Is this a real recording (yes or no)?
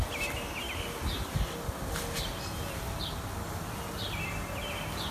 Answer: yes